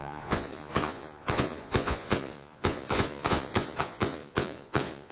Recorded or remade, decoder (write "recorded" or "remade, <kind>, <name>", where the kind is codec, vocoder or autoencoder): remade, vocoder, Vocos